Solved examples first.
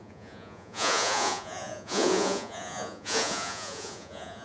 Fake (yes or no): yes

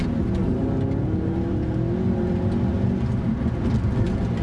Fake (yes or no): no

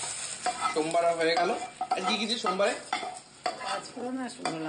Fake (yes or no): no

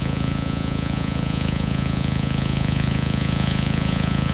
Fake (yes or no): yes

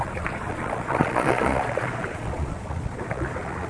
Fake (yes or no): yes